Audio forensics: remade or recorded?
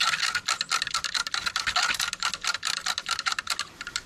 recorded